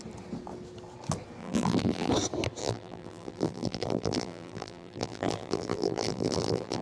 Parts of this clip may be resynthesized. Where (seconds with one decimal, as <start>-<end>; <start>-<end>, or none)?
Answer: 1.4-2.1; 2.6-6.8